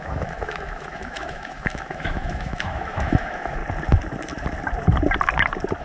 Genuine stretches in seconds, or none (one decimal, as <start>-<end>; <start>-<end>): 3.6-5.8